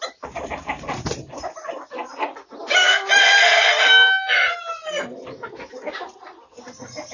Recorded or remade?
recorded